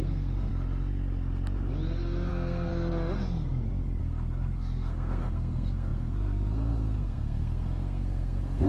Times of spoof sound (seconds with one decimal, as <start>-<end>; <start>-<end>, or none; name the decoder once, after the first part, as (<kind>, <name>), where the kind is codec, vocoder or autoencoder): 0.0-0.5 (codec, SNAC); 2.3-2.7; 4.0-8.7